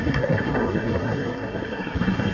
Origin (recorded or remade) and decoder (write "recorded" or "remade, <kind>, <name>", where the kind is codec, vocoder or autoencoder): remade, codec, SNAC